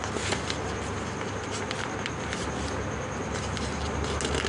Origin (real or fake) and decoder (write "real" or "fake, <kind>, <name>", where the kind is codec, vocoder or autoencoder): real